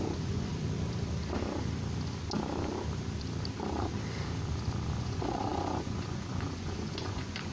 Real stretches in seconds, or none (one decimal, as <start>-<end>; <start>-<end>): 0.5-5.0